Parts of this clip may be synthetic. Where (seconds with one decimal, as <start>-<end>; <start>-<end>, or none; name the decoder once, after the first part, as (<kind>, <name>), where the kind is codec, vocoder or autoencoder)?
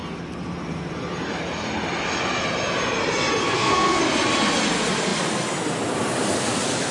3.4-4.0 (codec, SNAC)